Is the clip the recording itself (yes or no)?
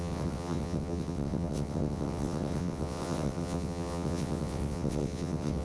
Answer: no